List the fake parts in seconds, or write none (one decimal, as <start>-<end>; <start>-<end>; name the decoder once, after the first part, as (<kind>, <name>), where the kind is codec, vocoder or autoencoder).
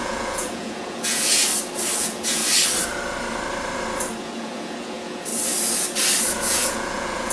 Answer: 0.0-1.5 (vocoder, Vocos); 2.0-2.4; 4.2-5.3; 6.3-7.3